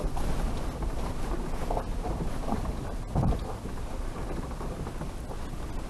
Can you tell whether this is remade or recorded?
recorded